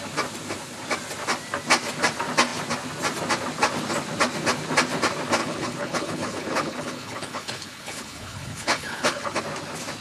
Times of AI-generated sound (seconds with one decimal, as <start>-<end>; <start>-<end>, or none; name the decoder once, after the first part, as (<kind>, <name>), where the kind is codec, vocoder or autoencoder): 5.4-9.4 (codec, HILCodec)